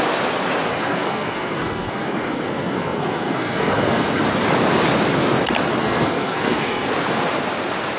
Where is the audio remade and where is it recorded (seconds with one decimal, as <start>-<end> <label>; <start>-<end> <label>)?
0.0-0.7 recorded; 0.7-4.2 remade; 4.2-5.8 recorded; 5.8-6.9 remade; 6.9-8.0 recorded